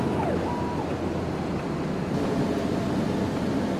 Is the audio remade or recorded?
recorded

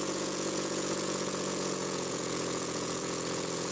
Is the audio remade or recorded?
remade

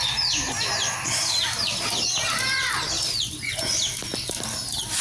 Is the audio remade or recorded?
recorded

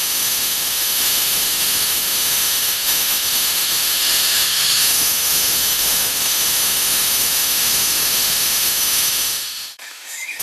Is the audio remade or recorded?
remade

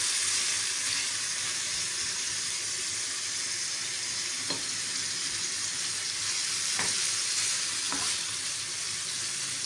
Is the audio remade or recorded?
recorded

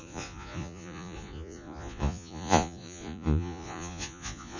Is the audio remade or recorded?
remade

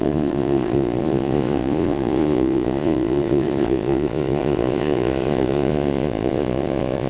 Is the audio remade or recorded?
remade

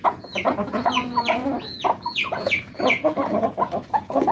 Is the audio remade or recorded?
remade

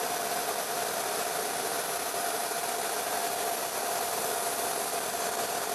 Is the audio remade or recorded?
recorded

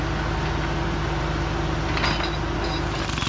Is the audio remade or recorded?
recorded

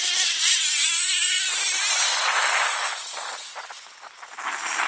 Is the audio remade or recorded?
recorded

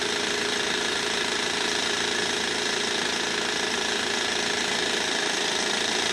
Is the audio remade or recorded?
recorded